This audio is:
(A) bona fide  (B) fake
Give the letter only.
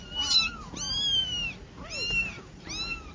A